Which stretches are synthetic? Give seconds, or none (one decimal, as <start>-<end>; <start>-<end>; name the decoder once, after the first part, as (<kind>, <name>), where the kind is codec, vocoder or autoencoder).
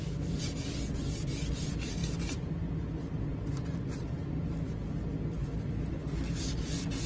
none